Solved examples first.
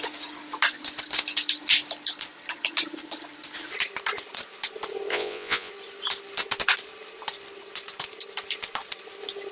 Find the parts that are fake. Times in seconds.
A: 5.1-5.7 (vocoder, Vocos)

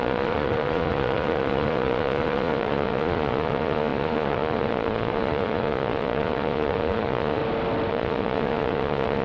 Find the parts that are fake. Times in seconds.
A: 0.0-7.4 (vocoder, Vocos); 7.9-9.2

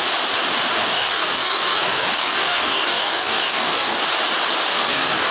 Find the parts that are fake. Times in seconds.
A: 0.8-4.0 (codec, DAC); 4.7-5.3

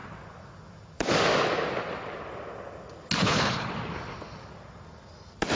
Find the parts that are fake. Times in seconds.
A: 3.2-3.7 (codec, HILCodec)